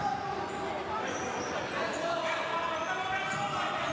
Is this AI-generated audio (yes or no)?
no